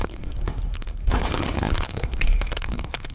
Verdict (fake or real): fake